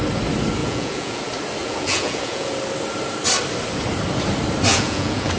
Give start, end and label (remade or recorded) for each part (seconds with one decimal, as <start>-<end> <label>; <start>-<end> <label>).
0.0-0.6 recorded; 0.6-1.2 remade; 1.2-1.6 recorded; 1.6-2.5 remade; 2.5-4.7 recorded; 4.7-5.4 remade